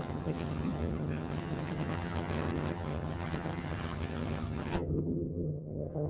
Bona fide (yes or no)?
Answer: no